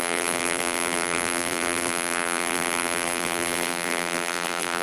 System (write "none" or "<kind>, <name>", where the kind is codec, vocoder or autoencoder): vocoder, BigVGAN v2